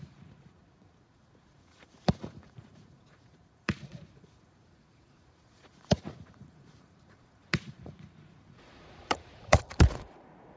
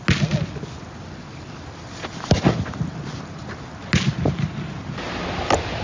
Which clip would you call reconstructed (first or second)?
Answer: first